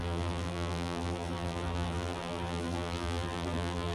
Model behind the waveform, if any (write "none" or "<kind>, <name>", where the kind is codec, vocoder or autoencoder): vocoder, BigVGAN v2